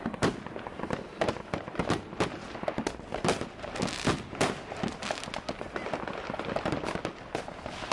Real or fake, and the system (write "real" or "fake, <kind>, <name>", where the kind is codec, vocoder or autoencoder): real